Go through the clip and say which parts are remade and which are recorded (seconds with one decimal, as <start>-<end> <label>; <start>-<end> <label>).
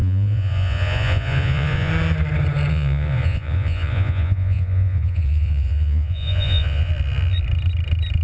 0.0-1.9 remade; 1.9-2.7 recorded; 2.7-6.9 remade; 6.9-8.2 recorded